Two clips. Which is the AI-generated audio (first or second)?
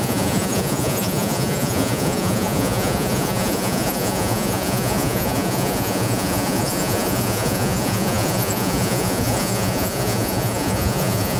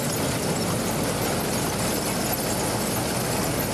first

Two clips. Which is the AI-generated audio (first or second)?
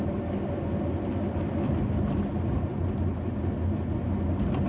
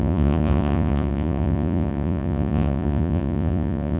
second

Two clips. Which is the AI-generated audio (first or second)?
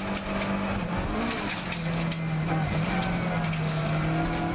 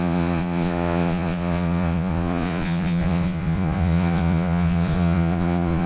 second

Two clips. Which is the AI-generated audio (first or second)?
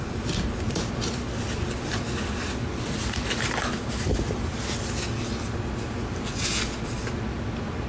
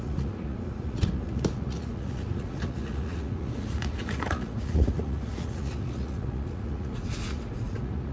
second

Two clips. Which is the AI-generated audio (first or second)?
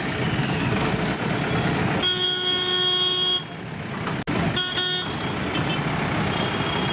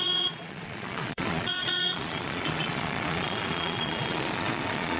second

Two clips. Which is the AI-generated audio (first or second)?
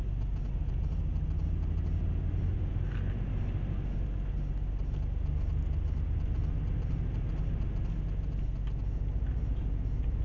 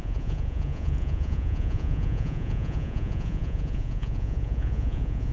second